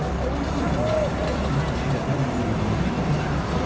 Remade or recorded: recorded